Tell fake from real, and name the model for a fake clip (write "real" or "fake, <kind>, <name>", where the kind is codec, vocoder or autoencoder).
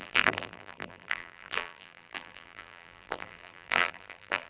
fake, vocoder, BigVGAN v2